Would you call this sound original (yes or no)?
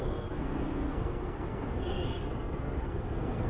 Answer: no